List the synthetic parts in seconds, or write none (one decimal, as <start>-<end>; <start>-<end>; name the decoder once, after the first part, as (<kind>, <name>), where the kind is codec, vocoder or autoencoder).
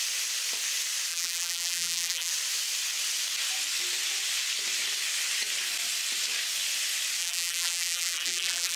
1.1-2.3 (vocoder, BigVGAN v2); 7.2-8.8